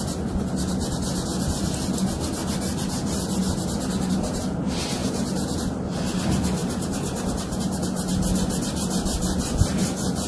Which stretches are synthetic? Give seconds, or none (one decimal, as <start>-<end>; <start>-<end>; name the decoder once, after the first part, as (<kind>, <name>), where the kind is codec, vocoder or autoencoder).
5.0-5.6 (vocoder, BigVGAN v2); 6.6-7.7